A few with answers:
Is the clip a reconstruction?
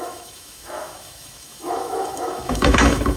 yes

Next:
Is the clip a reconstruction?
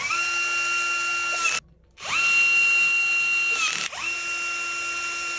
no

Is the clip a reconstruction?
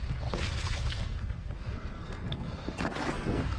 yes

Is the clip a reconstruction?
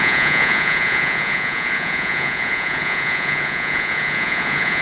yes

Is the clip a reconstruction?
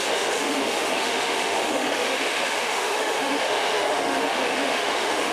yes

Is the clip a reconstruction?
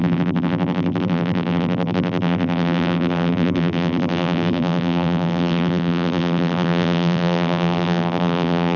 yes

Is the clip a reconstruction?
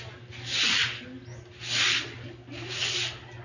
no